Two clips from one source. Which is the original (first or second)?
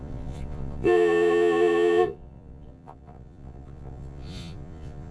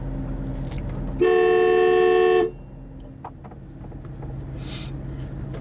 second